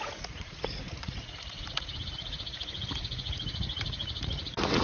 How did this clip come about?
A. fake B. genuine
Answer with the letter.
A